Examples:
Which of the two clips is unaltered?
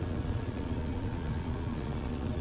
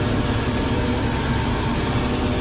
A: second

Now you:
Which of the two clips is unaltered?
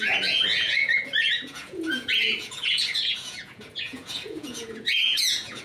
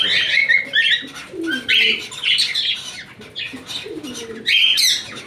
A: second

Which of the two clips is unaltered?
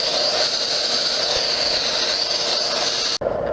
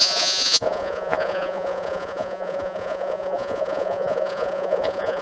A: first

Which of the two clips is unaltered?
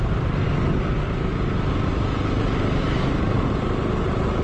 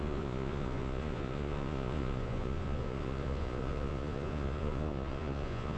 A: first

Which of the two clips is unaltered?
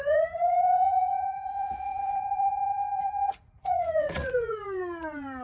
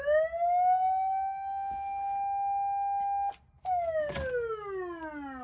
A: second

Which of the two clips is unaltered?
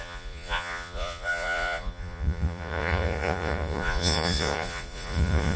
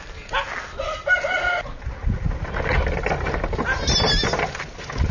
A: second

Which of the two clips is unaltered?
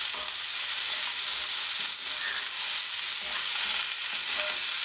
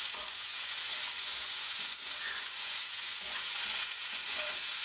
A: first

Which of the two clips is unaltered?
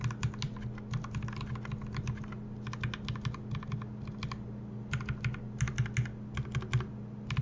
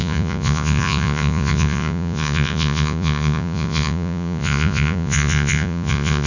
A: first